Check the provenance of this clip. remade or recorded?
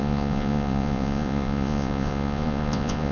remade